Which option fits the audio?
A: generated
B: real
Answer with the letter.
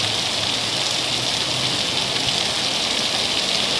B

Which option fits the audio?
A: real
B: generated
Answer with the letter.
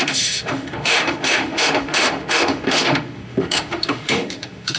B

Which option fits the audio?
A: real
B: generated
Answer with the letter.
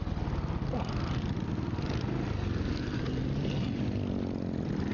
A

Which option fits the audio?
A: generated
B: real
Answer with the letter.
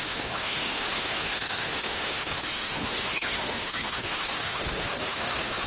A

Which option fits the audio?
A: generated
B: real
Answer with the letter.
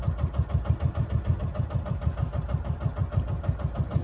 B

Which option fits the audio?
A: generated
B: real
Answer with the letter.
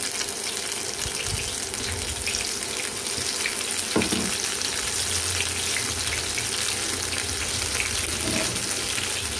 B